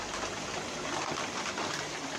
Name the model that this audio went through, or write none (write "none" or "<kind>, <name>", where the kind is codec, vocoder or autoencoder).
none